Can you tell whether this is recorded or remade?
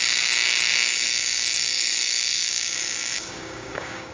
remade